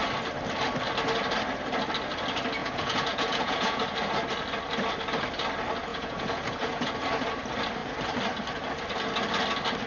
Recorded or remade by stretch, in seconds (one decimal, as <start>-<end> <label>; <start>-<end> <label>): 0.0-2.6 recorded; 2.6-3.8 remade; 3.8-5.9 recorded; 5.9-6.9 remade; 6.9-9.9 recorded